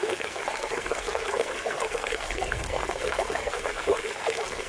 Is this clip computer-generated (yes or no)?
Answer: yes